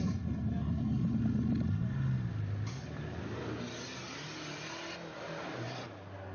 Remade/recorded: recorded